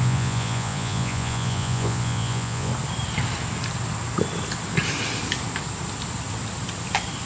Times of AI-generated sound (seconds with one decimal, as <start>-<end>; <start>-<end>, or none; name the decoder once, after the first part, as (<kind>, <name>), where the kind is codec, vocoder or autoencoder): 0.0-2.7 (vocoder, Vocos)